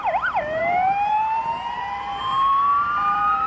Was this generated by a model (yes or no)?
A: yes